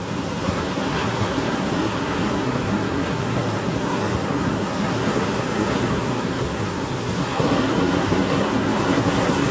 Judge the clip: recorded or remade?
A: remade